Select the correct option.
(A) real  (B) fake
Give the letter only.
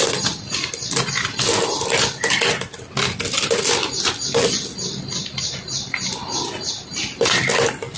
A